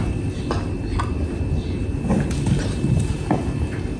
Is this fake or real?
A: real